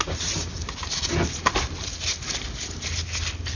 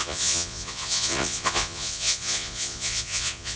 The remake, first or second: second